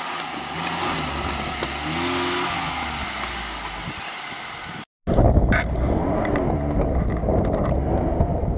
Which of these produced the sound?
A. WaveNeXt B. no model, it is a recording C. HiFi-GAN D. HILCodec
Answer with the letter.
B